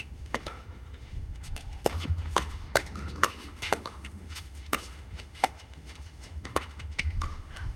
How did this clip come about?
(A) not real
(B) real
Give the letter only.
A